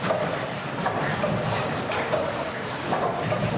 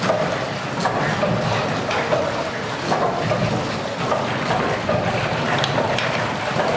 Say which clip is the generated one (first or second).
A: first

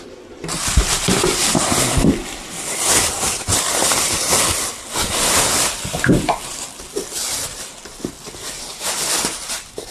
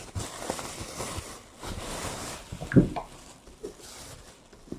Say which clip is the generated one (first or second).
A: first